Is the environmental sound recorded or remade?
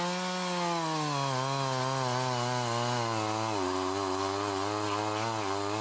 recorded